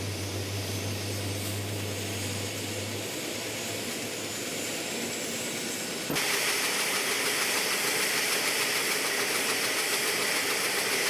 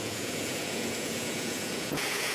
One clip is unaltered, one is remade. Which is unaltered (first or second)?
first